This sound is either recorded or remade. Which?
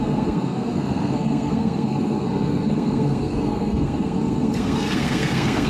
remade